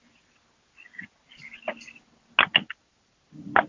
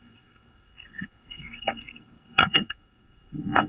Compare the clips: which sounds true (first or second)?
first